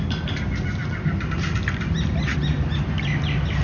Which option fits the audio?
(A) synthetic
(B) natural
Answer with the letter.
B